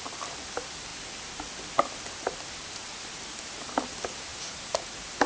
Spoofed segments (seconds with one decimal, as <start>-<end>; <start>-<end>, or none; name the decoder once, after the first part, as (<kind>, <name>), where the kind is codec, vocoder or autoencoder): none